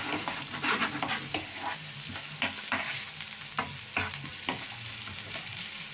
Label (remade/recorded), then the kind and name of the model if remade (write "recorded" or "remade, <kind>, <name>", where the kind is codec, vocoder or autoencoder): recorded